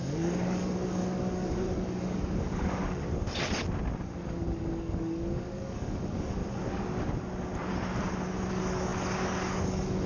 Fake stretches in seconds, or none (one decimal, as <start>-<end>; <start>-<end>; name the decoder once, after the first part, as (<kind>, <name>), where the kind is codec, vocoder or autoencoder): 0.0-3.1 (codec, DAC); 4.0-6.4; 8.5-10.1